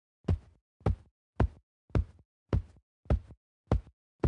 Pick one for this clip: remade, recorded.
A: recorded